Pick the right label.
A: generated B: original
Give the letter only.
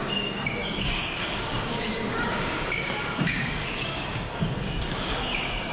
A